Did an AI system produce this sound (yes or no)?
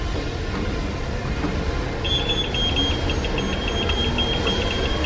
no